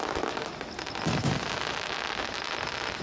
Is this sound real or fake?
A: real